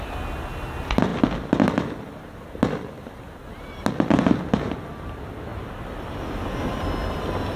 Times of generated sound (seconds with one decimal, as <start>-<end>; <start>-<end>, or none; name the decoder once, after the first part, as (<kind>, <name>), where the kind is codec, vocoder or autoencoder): none